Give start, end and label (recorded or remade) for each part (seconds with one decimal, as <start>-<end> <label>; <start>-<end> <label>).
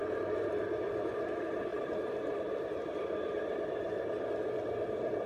0.0-1.2 remade; 1.2-1.7 recorded; 1.7-5.3 remade